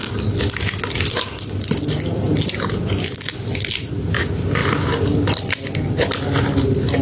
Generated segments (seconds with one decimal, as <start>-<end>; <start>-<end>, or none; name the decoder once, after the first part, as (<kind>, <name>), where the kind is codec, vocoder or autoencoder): 0.0-4.6 (vocoder, BigVGAN v2)